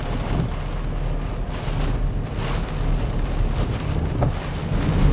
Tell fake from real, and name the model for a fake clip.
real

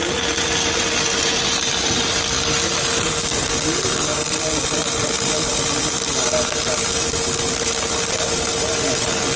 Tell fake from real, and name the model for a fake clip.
real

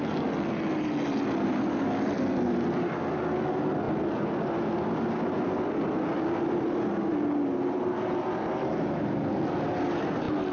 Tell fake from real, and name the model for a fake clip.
real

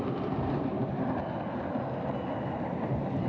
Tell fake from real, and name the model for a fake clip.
real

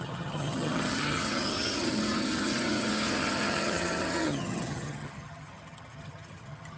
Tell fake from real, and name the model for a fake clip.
fake, vocoder, HiFi-GAN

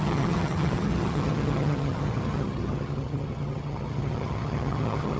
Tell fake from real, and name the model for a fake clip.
fake, vocoder, HiFi-GAN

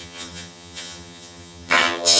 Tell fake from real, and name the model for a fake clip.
fake, vocoder, HiFi-GAN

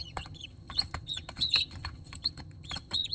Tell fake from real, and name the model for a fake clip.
fake, vocoder, HiFi-GAN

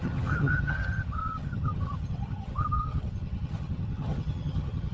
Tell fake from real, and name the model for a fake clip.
fake, vocoder, HiFi-GAN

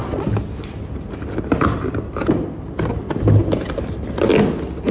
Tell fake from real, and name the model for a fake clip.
real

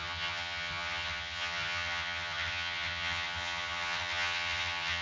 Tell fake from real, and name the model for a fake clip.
fake, vocoder, HiFi-GAN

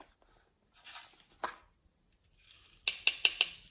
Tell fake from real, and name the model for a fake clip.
real